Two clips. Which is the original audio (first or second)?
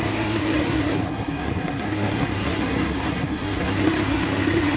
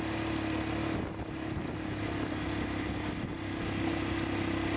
second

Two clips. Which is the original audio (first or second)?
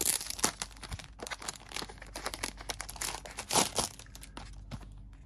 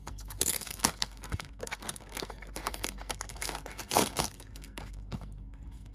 first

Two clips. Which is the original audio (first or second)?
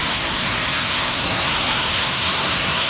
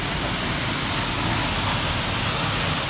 second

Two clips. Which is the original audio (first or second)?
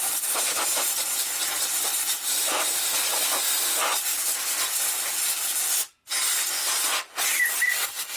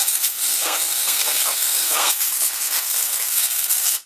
first